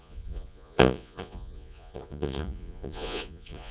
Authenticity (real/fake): fake